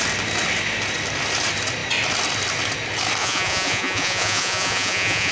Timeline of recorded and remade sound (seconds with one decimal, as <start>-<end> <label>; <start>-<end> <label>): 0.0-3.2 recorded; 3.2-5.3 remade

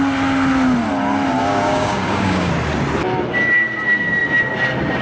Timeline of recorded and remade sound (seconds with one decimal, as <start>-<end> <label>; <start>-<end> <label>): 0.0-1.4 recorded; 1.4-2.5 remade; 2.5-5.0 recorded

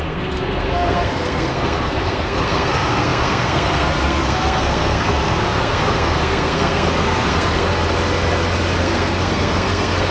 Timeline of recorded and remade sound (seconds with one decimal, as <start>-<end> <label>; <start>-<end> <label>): 0.0-7.7 remade; 7.7-8.8 recorded; 8.8-10.1 remade

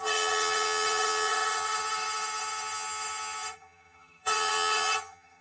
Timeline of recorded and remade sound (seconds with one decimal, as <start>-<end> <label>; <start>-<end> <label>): 0.0-5.4 remade